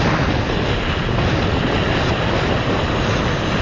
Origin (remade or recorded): recorded